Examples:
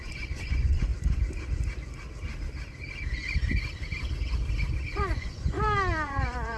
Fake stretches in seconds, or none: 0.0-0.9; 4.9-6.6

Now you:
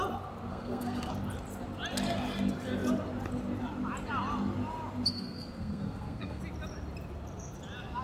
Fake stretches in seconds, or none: 0.5-1.1; 5.1-6.4